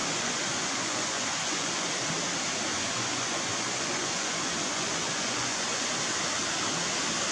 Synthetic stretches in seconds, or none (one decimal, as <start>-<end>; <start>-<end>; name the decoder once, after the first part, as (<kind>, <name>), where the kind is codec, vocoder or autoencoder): 0.0-1.9 (vocoder, Vocos); 2.7-5.9